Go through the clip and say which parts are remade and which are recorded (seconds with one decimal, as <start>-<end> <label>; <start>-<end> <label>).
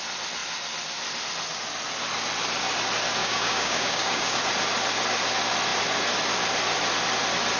0.0-3.2 recorded; 3.2-4.4 remade; 4.4-7.6 recorded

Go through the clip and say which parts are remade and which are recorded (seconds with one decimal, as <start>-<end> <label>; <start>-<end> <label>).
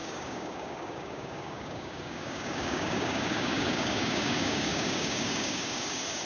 0.0-6.3 remade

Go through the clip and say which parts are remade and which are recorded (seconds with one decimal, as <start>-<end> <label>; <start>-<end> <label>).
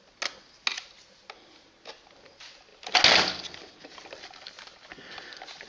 0.0-5.7 recorded